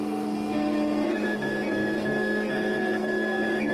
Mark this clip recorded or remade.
remade